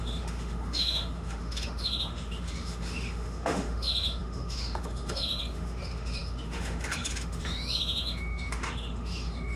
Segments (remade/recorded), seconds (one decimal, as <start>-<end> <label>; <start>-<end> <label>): 0.0-9.6 remade